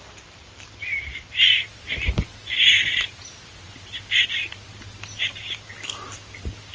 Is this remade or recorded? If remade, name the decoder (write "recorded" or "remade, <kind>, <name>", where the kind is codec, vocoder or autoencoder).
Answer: remade, vocoder, BigVGAN v2